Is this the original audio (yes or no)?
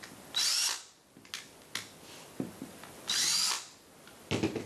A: yes